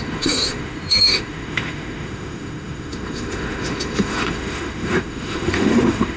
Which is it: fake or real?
fake